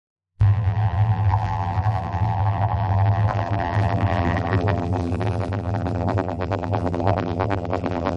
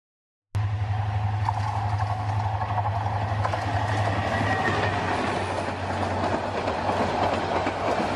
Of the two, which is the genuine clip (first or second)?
second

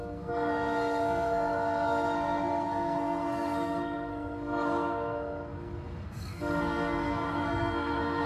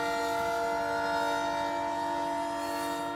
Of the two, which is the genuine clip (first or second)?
second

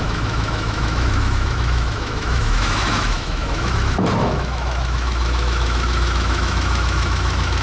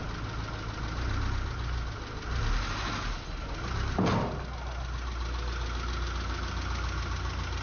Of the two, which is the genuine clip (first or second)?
second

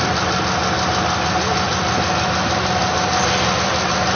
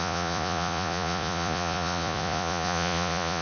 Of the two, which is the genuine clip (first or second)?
first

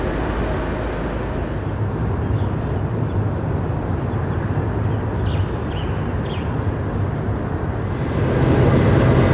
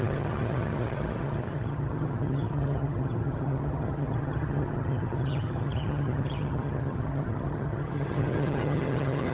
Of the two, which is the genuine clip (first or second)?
first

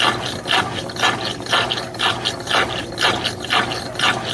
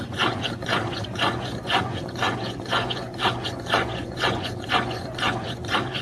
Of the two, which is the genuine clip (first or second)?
first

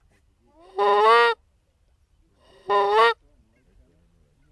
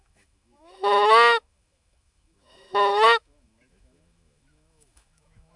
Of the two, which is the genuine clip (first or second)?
first